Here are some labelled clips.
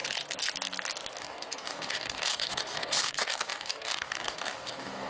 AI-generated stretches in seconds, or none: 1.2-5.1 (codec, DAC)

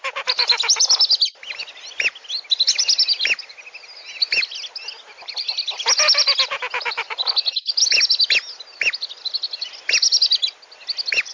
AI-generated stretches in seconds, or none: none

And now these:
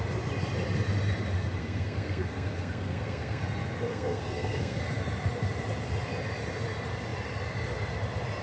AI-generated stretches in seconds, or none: 1.6-3.4 (codec, SNAC); 3.9-4.8

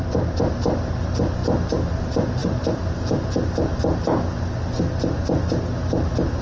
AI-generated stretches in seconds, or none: none

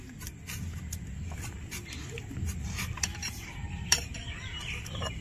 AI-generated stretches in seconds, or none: 3.2-4.4 (vocoder, BigVGAN v2)

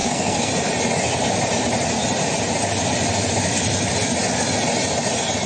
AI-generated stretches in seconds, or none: 0.0-0.5 (codec, SNAC)